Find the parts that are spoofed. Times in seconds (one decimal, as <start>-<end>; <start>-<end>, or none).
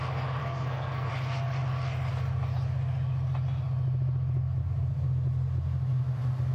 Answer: 0.4-1.1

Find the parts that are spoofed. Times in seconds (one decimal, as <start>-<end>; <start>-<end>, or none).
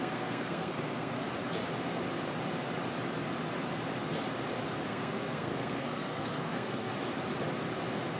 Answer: 0.0-1.2; 4.9-6.9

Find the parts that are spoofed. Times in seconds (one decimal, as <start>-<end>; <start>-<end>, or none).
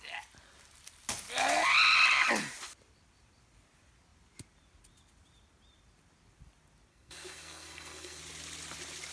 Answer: 6.9-8.2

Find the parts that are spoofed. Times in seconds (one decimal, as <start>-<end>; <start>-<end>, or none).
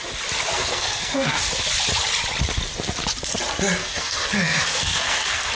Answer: 0.5-1.4; 3.8-5.5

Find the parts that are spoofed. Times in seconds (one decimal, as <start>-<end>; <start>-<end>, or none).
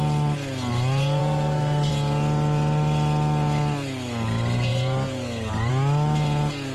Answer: 1.2-1.9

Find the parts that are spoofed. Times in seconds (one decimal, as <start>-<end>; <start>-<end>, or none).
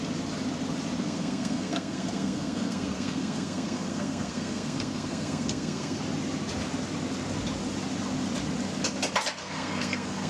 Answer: 1.0-6.0; 9.4-10.3